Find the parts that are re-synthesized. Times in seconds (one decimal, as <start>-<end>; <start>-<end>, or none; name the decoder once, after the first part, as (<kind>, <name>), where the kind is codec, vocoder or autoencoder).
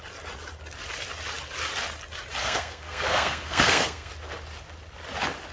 2.4-4.1 (codec, SNAC)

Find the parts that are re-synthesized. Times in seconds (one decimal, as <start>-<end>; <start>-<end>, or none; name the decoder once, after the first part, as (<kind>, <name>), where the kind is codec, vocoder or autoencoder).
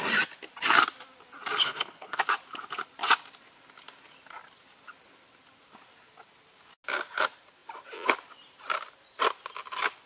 1.6-2.2 (codec, HILCodec)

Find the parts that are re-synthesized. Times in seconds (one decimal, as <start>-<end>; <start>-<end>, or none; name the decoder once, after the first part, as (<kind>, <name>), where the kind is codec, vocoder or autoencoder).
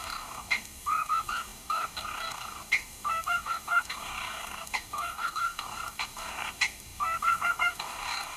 0.0-8.4 (codec, DAC)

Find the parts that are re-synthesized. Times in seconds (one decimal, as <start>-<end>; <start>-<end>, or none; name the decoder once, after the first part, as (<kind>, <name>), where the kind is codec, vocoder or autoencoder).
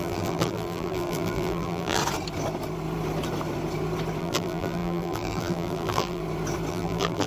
0.0-2.0 (vocoder, BigVGAN v2); 4.2-6.2; 6.7-7.3